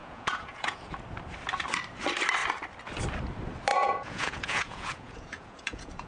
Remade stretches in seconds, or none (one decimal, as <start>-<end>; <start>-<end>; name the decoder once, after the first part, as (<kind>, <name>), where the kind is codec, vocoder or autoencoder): 0.0-0.8 (vocoder, Vocos); 3.7-6.1